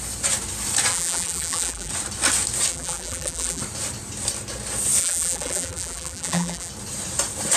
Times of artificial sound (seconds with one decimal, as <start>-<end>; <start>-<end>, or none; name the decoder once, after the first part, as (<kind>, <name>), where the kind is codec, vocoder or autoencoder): 0.9-1.9 (vocoder, BigVGAN v2); 2.7-3.6; 5.0-6.7